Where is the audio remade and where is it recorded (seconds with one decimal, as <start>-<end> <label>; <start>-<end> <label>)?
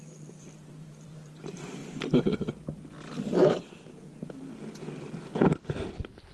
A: 0.0-1.8 remade; 1.8-5.2 recorded; 5.2-6.3 remade